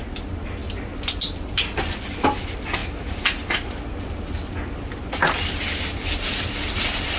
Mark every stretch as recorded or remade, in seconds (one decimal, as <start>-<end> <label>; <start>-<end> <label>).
0.0-7.2 recorded